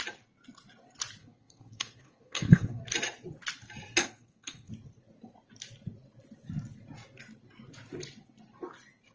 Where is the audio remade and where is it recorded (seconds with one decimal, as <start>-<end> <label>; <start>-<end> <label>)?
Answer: 0.0-1.2 recorded; 1.2-2.8 remade; 2.8-4.0 recorded; 4.0-4.7 remade; 4.7-9.1 recorded